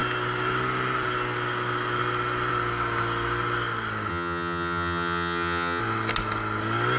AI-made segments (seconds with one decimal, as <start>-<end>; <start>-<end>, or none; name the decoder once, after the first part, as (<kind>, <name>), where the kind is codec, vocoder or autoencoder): 4.1-5.8 (vocoder, HiFi-GAN)